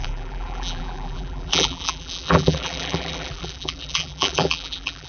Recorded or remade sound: remade